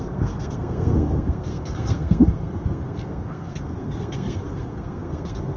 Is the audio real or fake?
fake